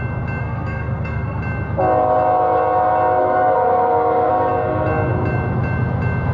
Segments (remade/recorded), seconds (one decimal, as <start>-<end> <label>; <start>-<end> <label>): 0.0-0.4 recorded; 0.4-1.4 remade; 1.4-3.2 recorded; 3.2-4.3 remade; 4.3-6.3 recorded